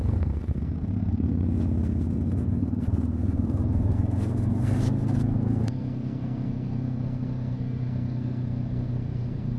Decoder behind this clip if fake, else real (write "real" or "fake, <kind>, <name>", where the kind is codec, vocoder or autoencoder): fake, codec, SNAC